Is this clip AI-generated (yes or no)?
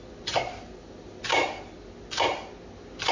no